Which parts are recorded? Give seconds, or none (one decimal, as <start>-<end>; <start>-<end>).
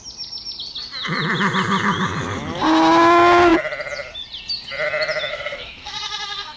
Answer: 0.0-5.3